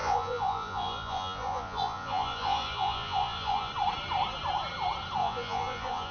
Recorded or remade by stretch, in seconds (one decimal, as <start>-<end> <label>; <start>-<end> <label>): 0.0-3.7 remade; 3.7-5.2 recorded; 5.2-6.1 remade